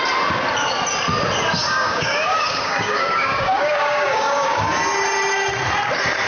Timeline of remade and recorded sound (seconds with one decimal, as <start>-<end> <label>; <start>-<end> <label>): 0.0-1.6 recorded; 1.6-4.7 remade; 4.7-6.3 recorded

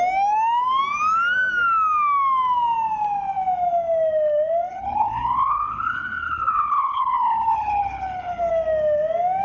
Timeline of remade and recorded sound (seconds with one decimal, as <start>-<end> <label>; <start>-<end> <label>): 0.0-4.7 recorded; 4.7-8.5 remade; 8.5-9.4 recorded

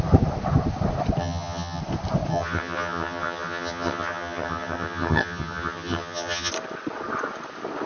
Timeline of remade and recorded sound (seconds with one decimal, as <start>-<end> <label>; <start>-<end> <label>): 0.0-1.2 recorded; 1.2-1.8 remade; 1.8-2.3 recorded; 2.3-6.5 remade; 6.5-7.9 recorded